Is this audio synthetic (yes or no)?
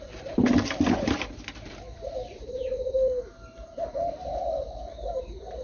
yes